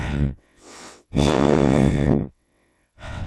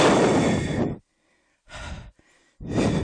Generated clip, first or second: first